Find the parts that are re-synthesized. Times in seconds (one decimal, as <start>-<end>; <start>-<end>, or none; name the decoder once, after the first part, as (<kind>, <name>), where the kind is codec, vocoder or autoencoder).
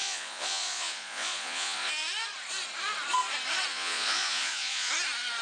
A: 0.0-1.9 (vocoder, Vocos); 3.7-4.9